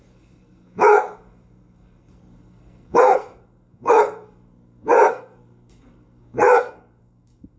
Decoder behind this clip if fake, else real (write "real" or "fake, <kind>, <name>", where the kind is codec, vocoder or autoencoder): fake, codec, SNAC